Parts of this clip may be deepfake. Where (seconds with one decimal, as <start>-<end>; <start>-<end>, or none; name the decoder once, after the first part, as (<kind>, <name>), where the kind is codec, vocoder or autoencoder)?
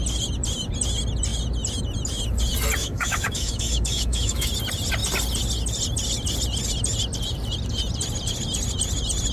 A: 2.8-4.5 (autoencoder, DAC-VAE)